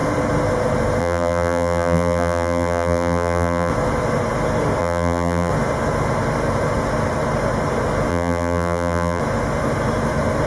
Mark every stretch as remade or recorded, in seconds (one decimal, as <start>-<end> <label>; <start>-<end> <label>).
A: 0.0-1.0 recorded; 1.0-3.7 remade; 3.7-4.8 recorded; 4.8-5.5 remade; 5.5-8.1 recorded; 8.1-9.2 remade; 9.2-10.5 recorded

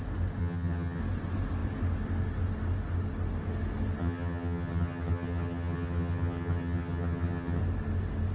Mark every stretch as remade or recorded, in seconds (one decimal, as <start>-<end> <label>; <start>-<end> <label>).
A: 0.0-0.4 recorded; 0.4-1.0 remade; 1.0-4.0 recorded; 4.0-7.6 remade; 7.6-8.3 recorded

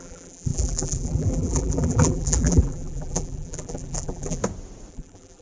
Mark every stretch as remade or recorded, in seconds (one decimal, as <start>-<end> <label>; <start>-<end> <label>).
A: 0.0-4.4 remade; 4.4-4.9 recorded; 4.9-5.4 remade

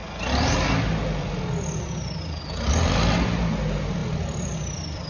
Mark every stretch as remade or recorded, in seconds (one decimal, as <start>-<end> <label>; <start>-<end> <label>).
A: 0.0-4.0 recorded; 4.0-5.1 remade

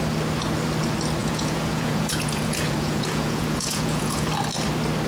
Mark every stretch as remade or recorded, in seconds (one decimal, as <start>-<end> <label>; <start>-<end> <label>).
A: 0.0-1.2 recorded; 1.2-4.3 remade; 4.3-5.1 recorded